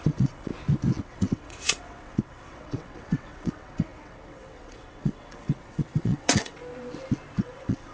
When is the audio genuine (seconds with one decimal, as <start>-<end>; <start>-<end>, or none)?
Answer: 0.5-1.0; 6.6-7.4